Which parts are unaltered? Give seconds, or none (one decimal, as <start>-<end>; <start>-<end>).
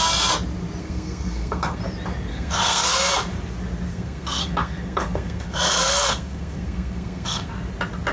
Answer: 0.0-0.8; 1.8-2.3; 3.1-3.9; 7.5-8.1